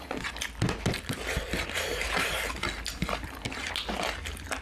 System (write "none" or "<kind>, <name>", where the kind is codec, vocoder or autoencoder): none